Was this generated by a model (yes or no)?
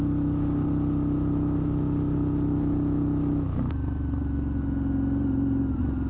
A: no